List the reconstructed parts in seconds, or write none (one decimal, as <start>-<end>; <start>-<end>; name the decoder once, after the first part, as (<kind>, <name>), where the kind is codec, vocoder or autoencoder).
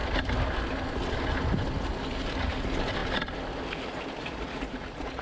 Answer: 4.2-5.2 (vocoder, Vocos)